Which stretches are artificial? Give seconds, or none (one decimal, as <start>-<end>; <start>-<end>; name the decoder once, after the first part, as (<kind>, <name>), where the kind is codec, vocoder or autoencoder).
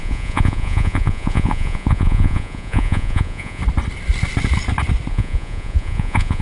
0.0-3.6 (vocoder, Vocos); 5.1-6.4